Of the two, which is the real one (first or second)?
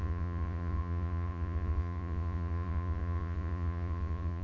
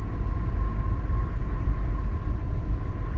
second